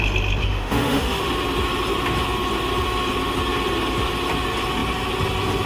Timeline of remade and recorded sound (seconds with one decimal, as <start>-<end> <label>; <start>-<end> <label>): 0.0-0.4 recorded; 0.4-1.3 remade; 1.3-5.7 recorded